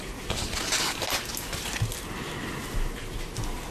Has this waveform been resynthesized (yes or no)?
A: no